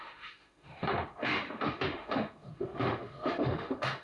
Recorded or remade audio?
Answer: remade